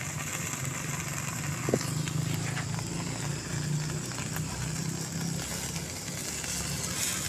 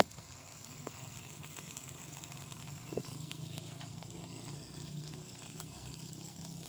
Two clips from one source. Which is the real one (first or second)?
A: first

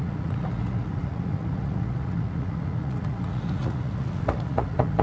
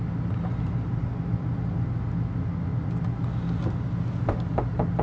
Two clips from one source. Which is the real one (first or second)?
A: second